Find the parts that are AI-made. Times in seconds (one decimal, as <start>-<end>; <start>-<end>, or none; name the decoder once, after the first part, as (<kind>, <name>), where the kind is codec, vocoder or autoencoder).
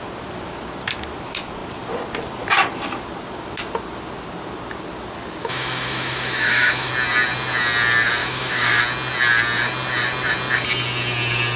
5.4-6.9 (autoencoder, DAC-VAE); 8.2-8.8